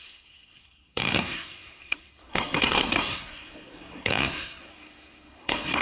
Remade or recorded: remade